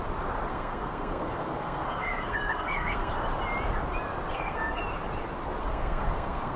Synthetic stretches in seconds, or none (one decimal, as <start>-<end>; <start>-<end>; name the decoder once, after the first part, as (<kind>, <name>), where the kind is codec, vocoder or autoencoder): 0.5-3.1 (codec, SNAC); 4.3-4.8; 5.6-6.6